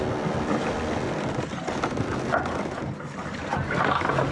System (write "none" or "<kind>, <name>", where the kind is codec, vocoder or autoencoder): none